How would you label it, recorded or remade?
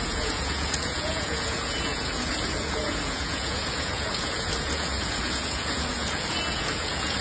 remade